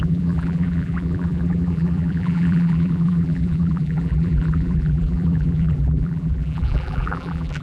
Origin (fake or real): fake